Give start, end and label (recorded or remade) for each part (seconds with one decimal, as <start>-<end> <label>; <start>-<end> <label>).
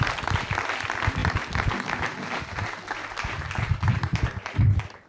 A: 0.0-5.1 recorded